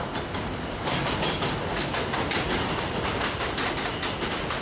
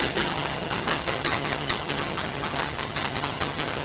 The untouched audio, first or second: first